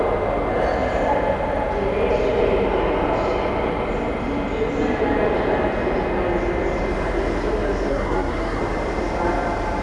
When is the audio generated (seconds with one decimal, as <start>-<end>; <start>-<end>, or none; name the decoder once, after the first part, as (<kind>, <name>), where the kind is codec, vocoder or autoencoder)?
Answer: 7.9-8.6 (codec, SNAC)